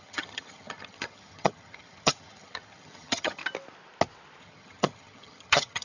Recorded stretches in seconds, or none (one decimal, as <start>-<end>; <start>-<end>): 3.4-4.4